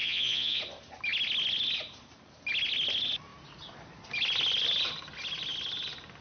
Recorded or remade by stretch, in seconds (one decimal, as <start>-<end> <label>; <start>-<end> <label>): 0.0-0.6 remade; 0.6-6.2 recorded